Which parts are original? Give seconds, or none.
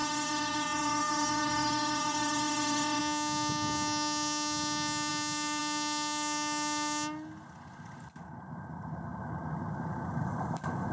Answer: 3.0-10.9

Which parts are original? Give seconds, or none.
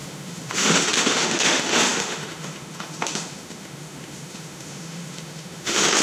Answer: none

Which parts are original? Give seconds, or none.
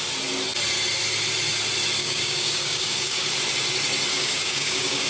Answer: 0.0-2.0; 3.3-4.1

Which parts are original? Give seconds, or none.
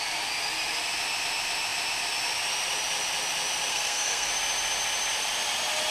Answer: 0.0-3.7; 4.3-5.9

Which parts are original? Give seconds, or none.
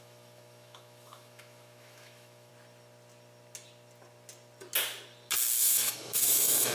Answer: 2.5-5.6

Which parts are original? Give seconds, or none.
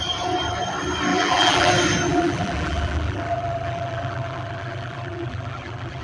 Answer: 0.0-1.1; 1.7-2.1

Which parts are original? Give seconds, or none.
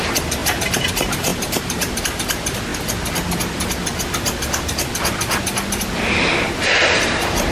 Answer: 2.7-6.0